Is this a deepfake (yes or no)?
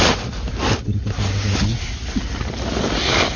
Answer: no